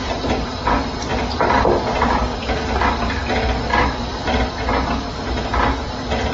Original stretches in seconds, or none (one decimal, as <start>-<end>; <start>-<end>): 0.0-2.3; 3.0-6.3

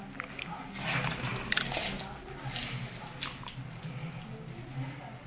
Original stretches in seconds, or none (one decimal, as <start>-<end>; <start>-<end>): 0.0-5.3

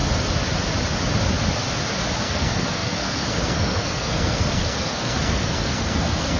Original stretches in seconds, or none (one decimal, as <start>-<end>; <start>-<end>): 0.0-2.2

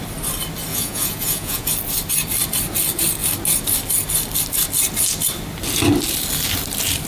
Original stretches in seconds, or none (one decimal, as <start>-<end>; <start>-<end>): 0.0-0.7; 1.7-7.1

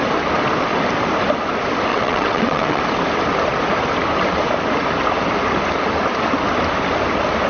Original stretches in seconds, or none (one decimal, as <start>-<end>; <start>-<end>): 0.0-1.9; 2.8-7.5